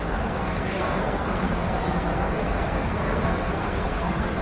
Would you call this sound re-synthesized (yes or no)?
yes